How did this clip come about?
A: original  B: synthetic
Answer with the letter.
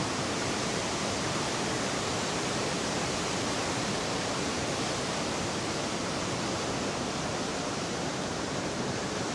B